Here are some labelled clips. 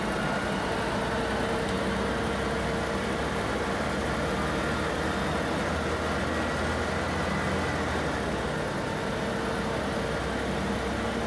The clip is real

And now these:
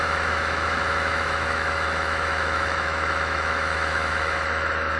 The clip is fake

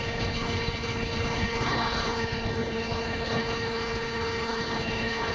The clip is fake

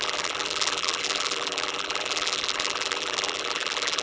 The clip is fake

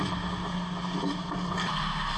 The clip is real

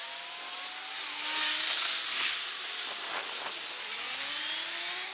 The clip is real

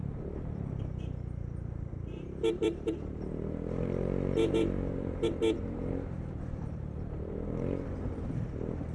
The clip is fake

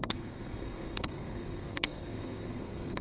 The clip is fake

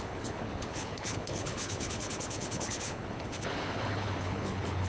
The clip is fake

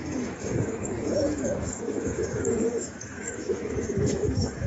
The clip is fake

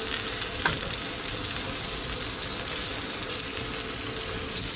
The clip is real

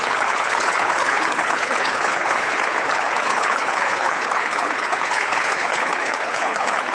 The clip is fake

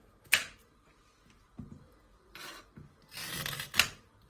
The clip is real